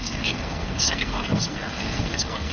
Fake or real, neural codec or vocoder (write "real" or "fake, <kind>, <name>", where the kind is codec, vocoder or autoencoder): fake, codec, SNAC